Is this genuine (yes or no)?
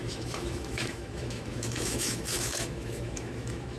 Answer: no